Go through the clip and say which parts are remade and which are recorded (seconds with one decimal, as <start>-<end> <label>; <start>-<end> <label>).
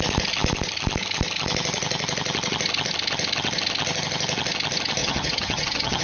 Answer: 0.0-5.0 recorded; 5.0-6.0 remade